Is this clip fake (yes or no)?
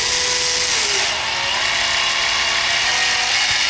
no